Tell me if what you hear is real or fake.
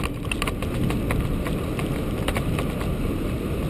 real